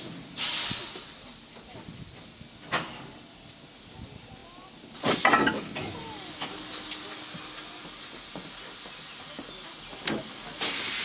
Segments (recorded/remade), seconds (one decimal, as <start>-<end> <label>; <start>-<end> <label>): 0.0-4.4 recorded; 4.4-5.6 remade; 5.6-11.0 recorded